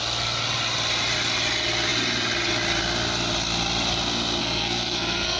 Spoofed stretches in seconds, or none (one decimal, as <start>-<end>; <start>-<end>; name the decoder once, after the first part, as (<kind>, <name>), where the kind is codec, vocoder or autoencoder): 4.4-5.4 (codec, SNAC)